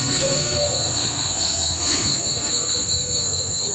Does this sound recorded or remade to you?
remade